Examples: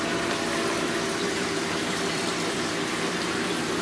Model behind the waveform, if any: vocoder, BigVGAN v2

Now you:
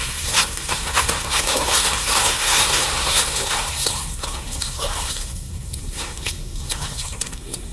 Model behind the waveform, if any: codec, SNAC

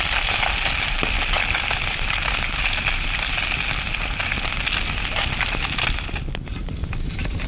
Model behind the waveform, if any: none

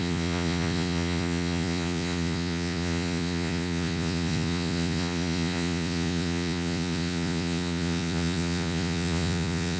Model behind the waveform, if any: vocoder, Vocos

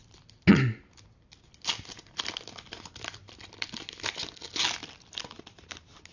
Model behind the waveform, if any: none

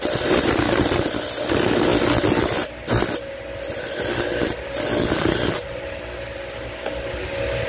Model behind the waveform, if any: none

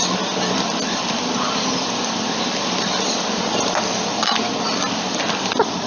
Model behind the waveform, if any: none